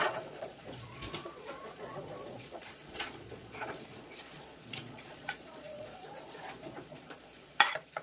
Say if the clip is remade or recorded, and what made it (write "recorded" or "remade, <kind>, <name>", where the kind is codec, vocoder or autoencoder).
remade, vocoder, Vocos